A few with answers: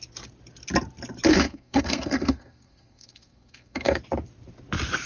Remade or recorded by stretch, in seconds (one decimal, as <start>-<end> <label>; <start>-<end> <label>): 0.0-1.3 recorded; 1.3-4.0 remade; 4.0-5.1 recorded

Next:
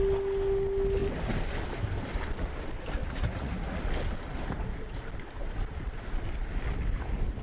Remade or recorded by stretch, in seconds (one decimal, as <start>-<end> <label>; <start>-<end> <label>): 0.0-3.0 recorded; 3.0-3.8 remade; 3.8-7.4 recorded

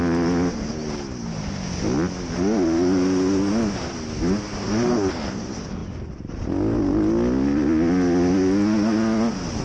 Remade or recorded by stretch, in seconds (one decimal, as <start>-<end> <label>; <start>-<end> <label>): 0.0-9.6 recorded

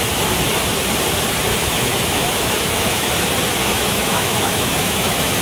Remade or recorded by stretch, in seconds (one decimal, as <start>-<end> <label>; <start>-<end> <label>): 0.0-1.5 recorded; 1.5-3.1 remade; 3.1-3.6 recorded; 3.6-5.4 remade